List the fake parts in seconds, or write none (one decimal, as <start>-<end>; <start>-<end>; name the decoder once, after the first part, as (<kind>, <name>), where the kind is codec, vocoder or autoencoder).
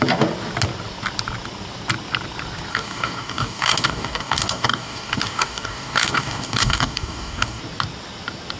2.7-7.6 (codec, DAC)